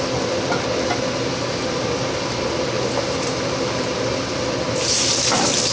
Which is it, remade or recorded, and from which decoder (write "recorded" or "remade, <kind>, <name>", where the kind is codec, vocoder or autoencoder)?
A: recorded